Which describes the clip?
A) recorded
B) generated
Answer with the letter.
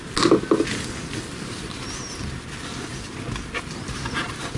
A